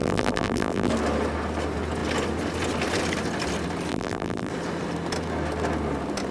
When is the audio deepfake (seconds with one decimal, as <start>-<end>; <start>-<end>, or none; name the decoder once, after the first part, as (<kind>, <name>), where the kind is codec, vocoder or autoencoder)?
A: 0.0-0.9 (vocoder, BigVGAN v2); 3.9-4.5